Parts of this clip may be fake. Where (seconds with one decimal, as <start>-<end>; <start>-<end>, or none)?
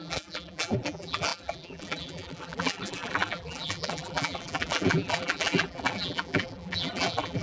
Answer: 0.0-7.4